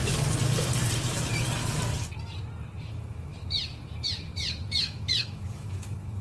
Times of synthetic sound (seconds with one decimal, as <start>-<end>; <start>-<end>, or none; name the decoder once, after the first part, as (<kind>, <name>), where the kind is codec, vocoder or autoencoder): 2.9-3.3 (autoencoder, DAC-VAE); 4.8-6.2